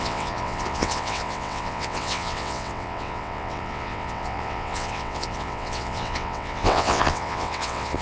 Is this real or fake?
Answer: fake